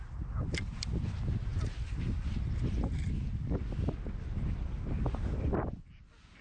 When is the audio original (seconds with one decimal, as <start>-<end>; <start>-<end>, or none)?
0.0-6.4